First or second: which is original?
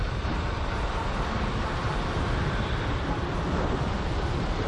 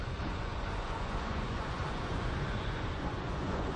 first